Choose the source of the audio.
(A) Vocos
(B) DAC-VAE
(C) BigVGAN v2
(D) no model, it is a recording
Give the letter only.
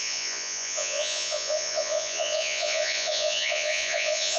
A